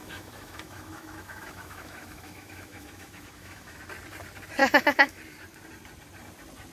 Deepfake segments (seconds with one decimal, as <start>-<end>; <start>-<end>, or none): 0.0-3.8; 4.6-5.2